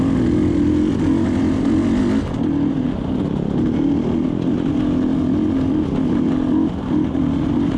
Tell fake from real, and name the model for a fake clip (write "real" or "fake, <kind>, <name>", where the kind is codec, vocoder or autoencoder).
real